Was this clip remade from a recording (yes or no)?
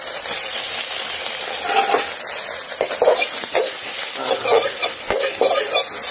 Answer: no